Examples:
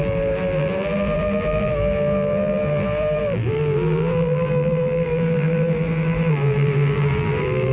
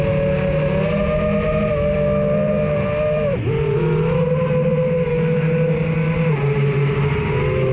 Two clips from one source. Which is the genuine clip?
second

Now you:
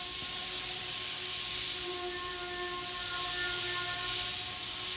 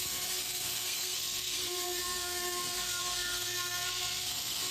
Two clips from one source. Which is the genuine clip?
first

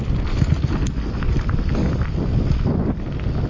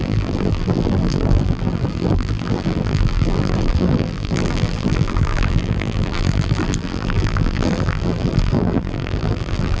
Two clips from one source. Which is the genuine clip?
first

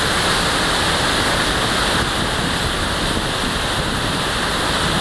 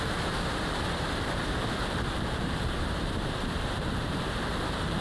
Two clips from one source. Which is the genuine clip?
first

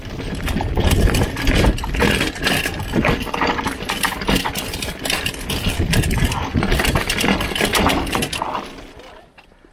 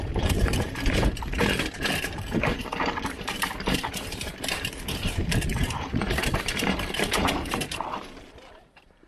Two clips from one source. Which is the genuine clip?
first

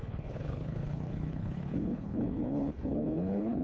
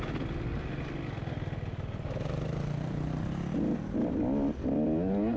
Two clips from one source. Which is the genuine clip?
second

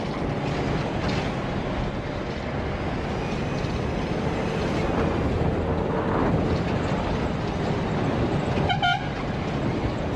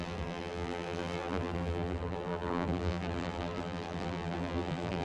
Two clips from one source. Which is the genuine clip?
first